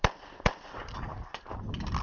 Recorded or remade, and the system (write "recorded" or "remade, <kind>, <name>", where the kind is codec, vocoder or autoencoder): recorded